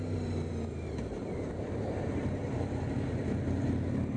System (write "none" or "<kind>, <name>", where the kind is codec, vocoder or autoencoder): none